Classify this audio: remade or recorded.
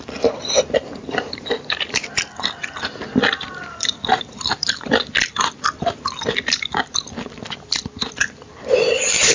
remade